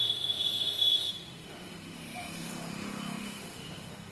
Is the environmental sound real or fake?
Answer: fake